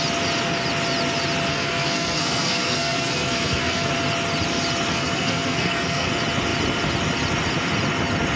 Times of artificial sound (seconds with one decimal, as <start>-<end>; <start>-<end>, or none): 1.5-3.9; 4.9-6.1